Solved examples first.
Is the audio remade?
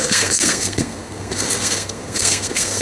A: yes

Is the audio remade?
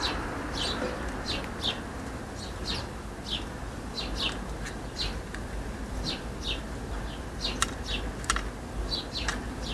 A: no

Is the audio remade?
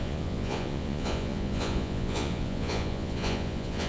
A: yes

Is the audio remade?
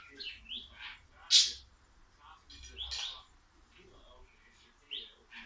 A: no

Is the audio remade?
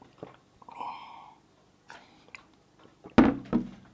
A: no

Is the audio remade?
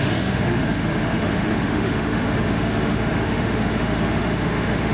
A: yes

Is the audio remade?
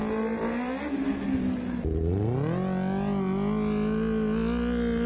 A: no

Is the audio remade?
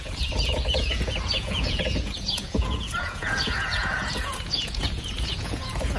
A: yes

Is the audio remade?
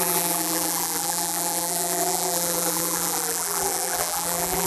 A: yes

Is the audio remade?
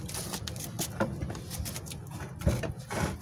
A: no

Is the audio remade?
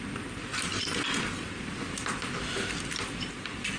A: no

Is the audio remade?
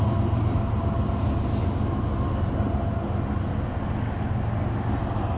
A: no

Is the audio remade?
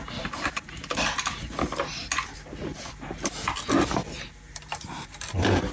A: no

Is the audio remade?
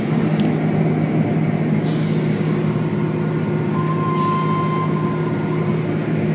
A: no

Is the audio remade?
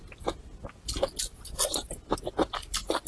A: no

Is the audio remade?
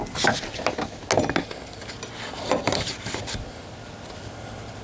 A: no